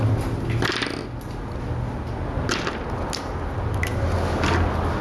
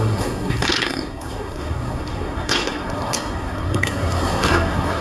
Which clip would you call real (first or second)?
first